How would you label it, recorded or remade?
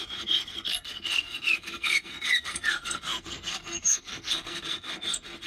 remade